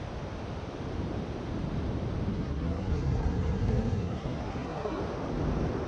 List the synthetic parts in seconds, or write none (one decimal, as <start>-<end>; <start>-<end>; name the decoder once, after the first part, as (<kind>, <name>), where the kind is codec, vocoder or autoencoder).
2.3-5.0 (codec, SNAC)